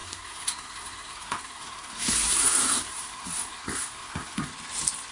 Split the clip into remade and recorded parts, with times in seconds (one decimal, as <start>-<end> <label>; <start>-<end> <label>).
0.0-4.5 remade; 4.5-5.1 recorded